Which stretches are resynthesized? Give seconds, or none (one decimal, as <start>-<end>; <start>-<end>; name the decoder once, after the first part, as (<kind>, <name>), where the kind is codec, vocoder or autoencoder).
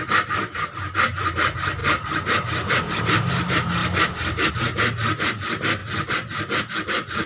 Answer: 0.0-3.8 (vocoder, BigVGAN v2); 4.5-5.8; 6.7-7.3